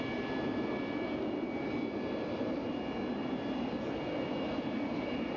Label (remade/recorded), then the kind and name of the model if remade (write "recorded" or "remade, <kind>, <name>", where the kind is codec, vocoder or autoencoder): recorded